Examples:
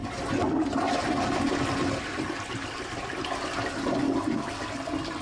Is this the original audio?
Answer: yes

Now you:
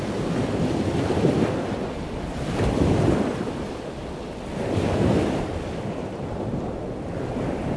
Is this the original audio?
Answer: yes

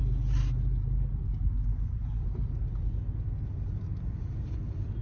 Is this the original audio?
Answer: yes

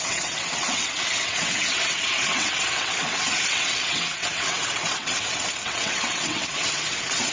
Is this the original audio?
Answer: no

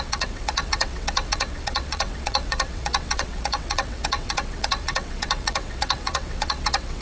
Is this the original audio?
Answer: no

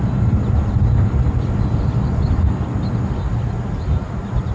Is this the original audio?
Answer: yes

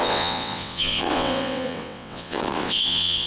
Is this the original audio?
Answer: no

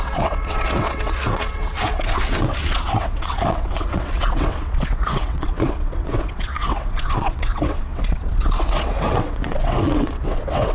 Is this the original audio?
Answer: no